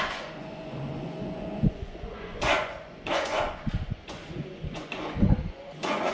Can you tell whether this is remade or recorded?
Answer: remade